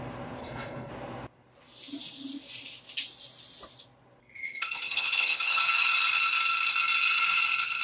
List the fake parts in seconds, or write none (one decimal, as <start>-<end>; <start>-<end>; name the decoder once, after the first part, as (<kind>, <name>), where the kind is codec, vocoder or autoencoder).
0.4-0.9 (codec, HILCodec); 4.4-5.6